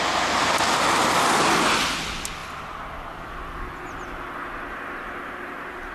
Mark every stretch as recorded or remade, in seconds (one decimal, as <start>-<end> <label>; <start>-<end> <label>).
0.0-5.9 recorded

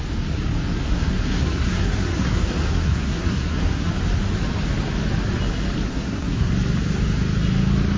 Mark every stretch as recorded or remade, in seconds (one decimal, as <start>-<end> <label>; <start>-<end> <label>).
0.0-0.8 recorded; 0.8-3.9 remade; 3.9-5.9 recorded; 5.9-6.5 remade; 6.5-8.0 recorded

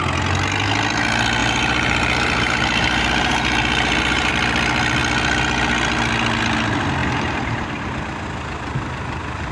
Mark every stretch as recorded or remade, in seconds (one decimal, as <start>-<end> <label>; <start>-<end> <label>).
0.0-1.4 recorded; 1.4-4.3 remade; 4.3-7.0 recorded; 7.0-8.0 remade; 8.0-9.5 recorded

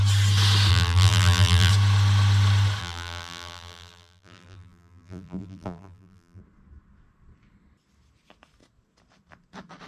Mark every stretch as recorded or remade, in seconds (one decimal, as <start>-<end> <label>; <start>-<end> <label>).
0.0-0.7 recorded; 0.7-1.7 remade; 1.7-2.8 recorded; 2.8-6.4 remade; 6.4-9.9 recorded